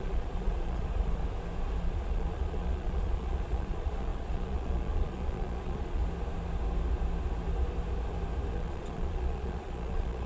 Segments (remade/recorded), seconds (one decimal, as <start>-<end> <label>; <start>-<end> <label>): 0.0-1.2 remade; 1.2-1.8 recorded; 1.8-6.0 remade; 6.0-8.5 recorded; 8.5-10.3 remade